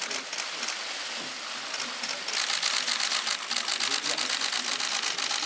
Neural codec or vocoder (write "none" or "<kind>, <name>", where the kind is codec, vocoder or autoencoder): none